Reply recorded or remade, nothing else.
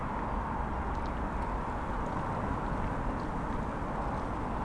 recorded